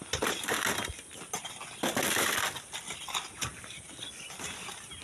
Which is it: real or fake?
real